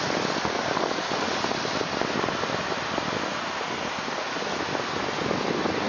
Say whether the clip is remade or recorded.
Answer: recorded